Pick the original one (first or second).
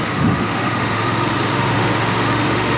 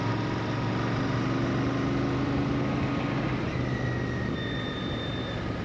second